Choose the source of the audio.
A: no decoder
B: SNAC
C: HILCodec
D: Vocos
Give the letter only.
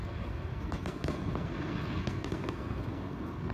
B